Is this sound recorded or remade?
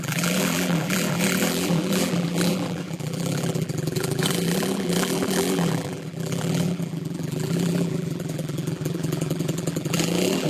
remade